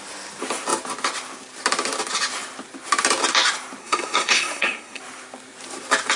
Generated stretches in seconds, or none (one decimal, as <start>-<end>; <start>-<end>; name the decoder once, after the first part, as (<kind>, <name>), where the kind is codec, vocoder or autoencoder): 3.8-5.0 (codec, SNAC)